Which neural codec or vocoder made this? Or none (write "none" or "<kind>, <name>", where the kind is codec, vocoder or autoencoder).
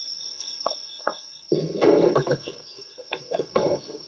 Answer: codec, SNAC